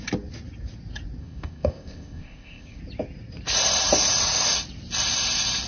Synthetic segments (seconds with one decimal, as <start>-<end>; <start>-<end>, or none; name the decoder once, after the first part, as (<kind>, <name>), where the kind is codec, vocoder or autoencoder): 1.2-2.8 (codec, ZipCodec)